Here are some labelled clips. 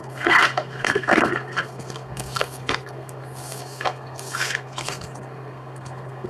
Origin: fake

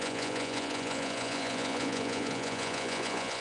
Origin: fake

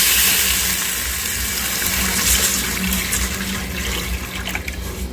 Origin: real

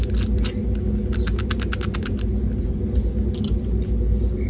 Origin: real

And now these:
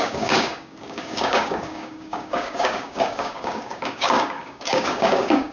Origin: fake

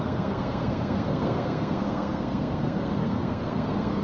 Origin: fake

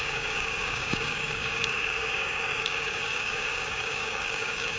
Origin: fake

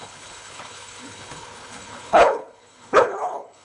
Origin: fake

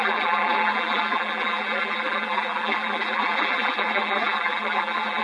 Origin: fake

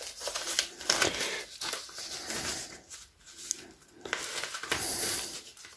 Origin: real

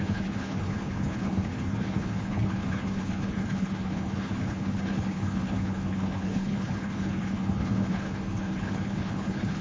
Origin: fake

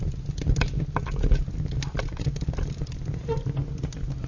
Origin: real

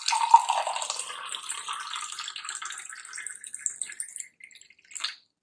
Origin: real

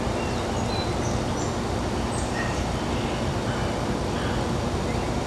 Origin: real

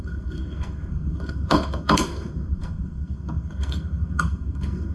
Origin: fake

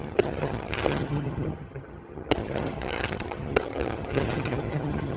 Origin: fake